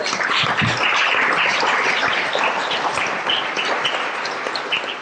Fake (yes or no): no